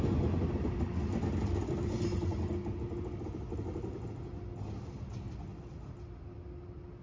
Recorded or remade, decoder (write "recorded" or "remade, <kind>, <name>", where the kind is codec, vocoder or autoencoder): recorded